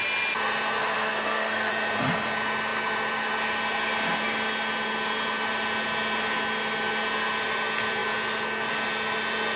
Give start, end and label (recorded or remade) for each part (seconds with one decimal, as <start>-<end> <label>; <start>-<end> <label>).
0.0-0.8 recorded; 0.8-1.7 remade; 1.7-9.6 recorded